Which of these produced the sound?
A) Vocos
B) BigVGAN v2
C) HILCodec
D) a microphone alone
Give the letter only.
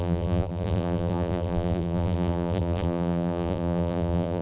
B